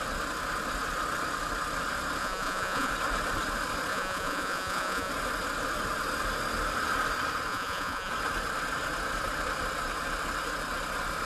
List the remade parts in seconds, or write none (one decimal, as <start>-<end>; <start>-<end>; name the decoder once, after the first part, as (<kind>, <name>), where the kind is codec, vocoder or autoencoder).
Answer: 2.2-2.9 (vocoder, Vocos); 3.9-5.1; 7.5-8.1